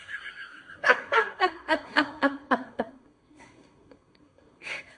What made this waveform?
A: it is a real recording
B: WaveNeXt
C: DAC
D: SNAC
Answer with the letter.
D